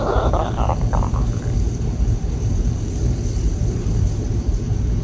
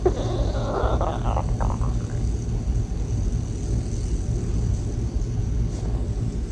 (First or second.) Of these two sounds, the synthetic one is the first